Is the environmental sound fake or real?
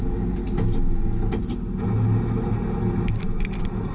real